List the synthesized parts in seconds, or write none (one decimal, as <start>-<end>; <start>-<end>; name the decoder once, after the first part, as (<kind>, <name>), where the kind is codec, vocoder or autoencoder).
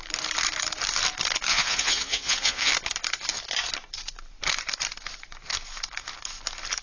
1.5-2.7 (vocoder, Vocos)